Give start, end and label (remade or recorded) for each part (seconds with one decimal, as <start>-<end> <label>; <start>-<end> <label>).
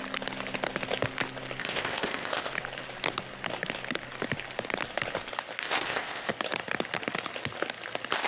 0.0-1.6 recorded; 1.6-2.5 remade; 2.5-5.6 recorded; 5.6-6.3 remade; 6.3-8.3 recorded